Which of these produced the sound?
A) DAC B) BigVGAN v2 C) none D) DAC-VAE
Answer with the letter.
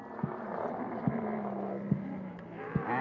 C